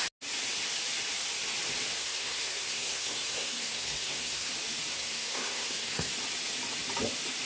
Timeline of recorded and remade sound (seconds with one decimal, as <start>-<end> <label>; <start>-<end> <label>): 0.0-2.0 recorded; 2.0-4.5 remade; 4.5-4.9 recorded; 4.9-6.1 remade; 6.1-7.5 recorded